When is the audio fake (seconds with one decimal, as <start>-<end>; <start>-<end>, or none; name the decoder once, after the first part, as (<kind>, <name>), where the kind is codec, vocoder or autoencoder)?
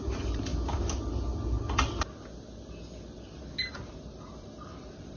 0.0-0.5 (vocoder, BigVGAN v2); 3.6-5.2